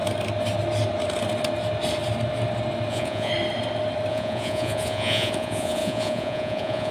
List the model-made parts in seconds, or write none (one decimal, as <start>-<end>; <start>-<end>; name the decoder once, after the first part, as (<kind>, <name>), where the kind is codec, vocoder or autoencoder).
2.9-3.3 (vocoder, Vocos); 4.1-6.9